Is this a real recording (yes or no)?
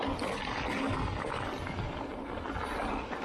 yes